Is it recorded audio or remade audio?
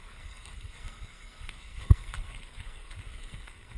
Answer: remade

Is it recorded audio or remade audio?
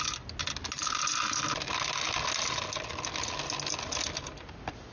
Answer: recorded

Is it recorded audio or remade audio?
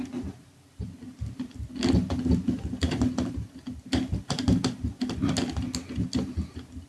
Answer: recorded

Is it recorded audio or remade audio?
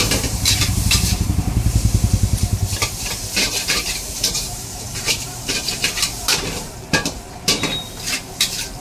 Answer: remade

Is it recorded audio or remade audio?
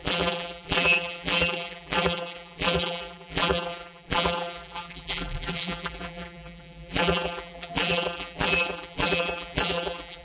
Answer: remade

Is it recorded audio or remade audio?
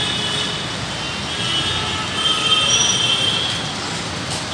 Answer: recorded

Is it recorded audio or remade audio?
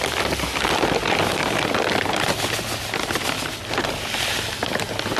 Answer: recorded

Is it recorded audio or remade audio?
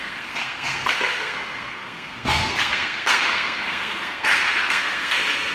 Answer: remade